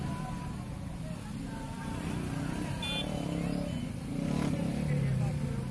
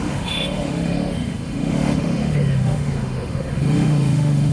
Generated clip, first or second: second